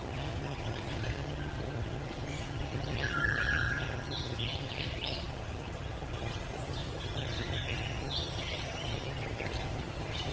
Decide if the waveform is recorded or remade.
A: remade